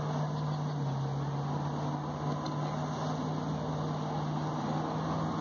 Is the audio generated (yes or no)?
no